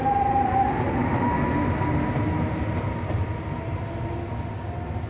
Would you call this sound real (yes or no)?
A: yes